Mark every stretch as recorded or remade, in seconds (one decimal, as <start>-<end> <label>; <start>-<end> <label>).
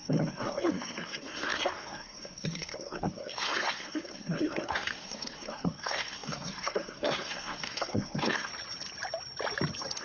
0.0-8.5 remade; 8.5-10.0 recorded